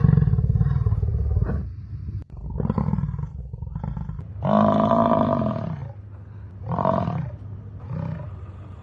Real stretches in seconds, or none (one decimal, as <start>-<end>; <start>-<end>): 0.0-8.8

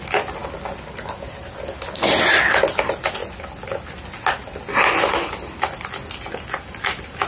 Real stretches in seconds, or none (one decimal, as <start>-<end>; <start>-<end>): 0.0-7.3